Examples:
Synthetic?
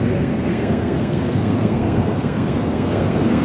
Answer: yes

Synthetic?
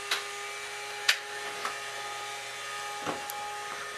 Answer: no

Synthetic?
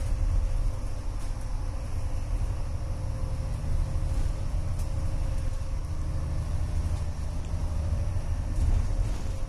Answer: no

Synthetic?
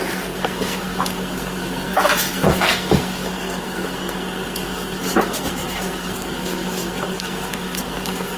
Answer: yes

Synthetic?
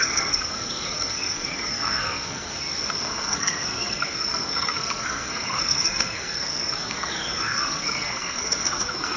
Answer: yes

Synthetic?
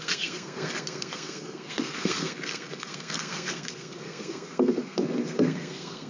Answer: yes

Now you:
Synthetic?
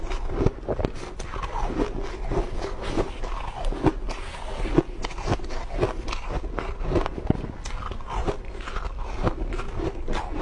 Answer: no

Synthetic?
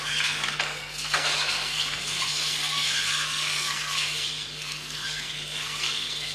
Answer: yes